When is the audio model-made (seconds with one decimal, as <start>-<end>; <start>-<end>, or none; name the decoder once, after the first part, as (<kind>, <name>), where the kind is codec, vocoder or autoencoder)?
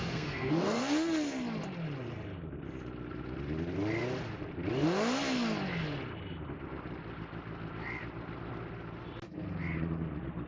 0.0-0.8 (codec, SNAC)